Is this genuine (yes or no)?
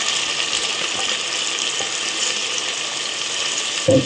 yes